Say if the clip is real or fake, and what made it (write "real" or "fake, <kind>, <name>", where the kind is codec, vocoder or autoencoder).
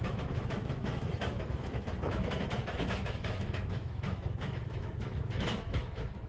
fake, autoencoder, DAC-VAE